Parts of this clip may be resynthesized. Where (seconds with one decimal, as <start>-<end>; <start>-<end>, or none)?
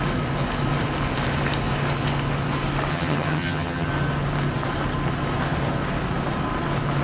2.9-3.9